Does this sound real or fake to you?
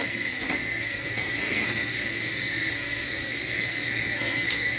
fake